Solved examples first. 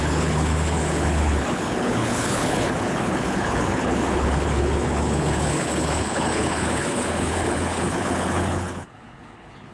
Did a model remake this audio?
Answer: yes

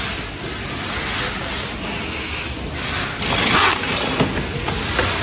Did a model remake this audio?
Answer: no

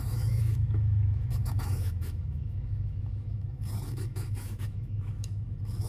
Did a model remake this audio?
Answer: yes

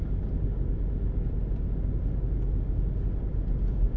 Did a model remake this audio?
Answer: no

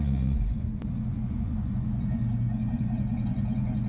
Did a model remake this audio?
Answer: yes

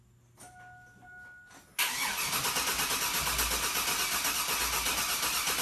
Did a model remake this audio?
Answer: no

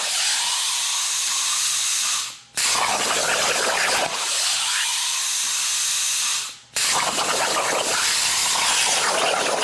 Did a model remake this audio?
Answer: no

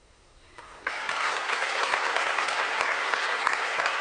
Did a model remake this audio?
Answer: yes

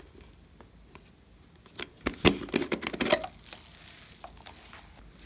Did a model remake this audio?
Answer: no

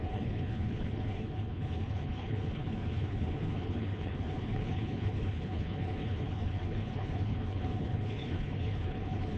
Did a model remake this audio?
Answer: yes